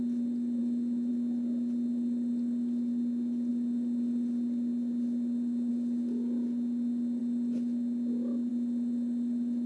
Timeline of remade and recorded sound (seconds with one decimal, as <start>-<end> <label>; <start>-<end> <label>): 0.0-9.7 recorded